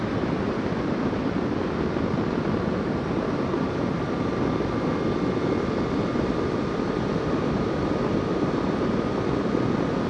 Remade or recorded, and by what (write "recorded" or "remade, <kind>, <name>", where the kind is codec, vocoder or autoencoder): recorded